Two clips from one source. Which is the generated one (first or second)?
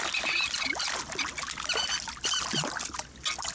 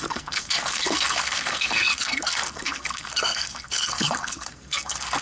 second